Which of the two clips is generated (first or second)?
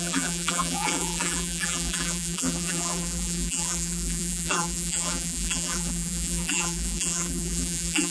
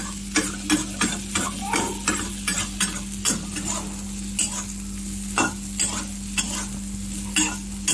first